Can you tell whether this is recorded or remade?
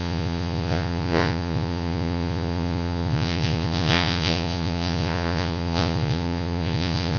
remade